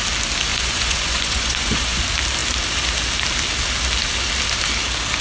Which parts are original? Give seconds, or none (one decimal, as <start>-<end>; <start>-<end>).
0.0-0.5; 2.0-5.2